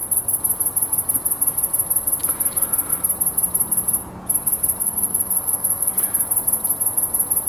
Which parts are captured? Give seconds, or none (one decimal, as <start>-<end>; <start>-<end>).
0.0-4.8; 5.9-7.5

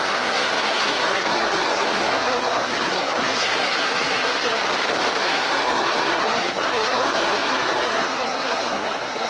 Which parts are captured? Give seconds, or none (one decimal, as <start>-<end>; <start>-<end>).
4.6-5.2

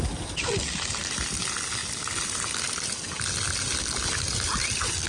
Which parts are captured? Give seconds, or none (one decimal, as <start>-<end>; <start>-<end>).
0.0-5.1

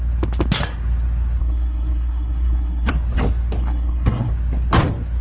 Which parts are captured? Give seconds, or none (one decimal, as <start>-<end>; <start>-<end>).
0.0-1.4; 2.9-3.6; 4.3-5.2

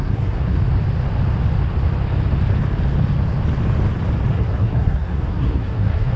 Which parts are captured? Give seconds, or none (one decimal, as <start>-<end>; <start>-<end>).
0.6-4.3